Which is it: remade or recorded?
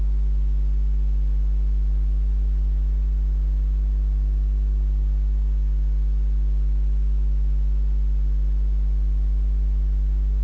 recorded